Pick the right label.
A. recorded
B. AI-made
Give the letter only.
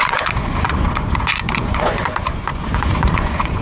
B